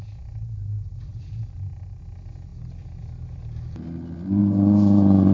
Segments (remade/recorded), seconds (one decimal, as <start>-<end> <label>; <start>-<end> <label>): 0.0-1.1 recorded; 1.1-2.0 remade; 2.0-4.4 recorded; 4.4-5.3 remade